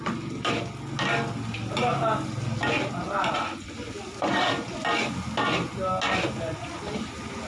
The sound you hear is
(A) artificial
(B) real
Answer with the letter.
B